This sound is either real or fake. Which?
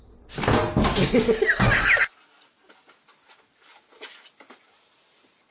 real